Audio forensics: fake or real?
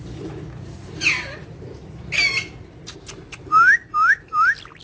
real